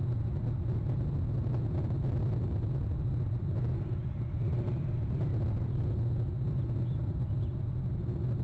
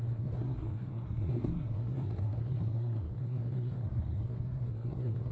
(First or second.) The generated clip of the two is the second